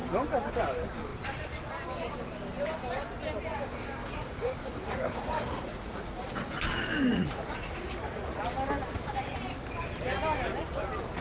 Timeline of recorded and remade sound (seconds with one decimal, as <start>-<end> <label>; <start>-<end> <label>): 0.0-4.0 recorded; 4.0-6.6 remade; 6.6-7.1 recorded; 7.1-8.4 remade; 8.4-11.2 recorded

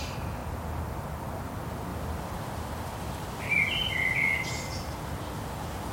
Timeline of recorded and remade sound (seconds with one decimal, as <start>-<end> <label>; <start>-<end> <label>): 0.0-5.9 recorded

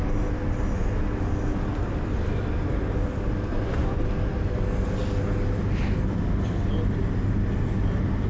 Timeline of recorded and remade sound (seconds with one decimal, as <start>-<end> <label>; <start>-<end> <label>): 0.0-3.5 recorded; 3.5-4.0 remade; 4.0-8.3 recorded